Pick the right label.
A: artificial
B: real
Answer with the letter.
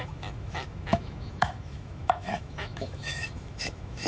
A